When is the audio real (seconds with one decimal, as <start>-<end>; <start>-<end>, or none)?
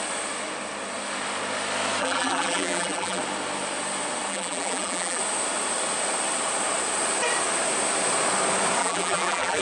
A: 0.0-2.0; 3.2-4.3; 5.2-8.8